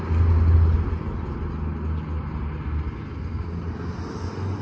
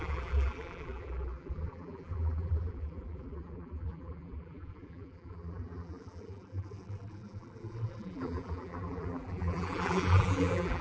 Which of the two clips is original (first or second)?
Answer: first